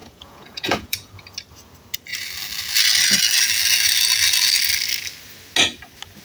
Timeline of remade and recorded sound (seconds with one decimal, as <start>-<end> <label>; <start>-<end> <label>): 0.0-1.2 remade; 1.2-6.2 recorded